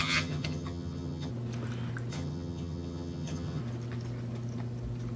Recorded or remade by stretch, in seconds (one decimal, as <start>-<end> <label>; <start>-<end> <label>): 0.0-1.3 remade; 1.3-2.1 recorded; 2.1-3.6 remade; 3.6-5.2 recorded